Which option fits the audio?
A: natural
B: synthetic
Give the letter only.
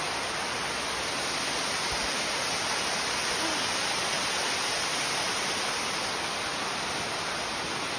A